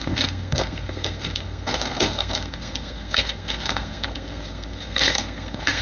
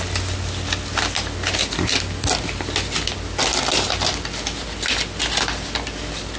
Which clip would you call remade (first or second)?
first